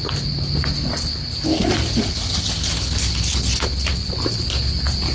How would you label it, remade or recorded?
recorded